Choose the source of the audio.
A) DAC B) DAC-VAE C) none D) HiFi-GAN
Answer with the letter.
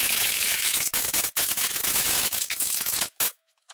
B